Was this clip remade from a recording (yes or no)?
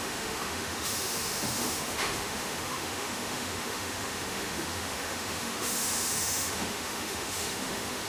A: yes